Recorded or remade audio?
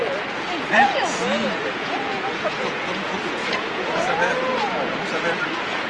remade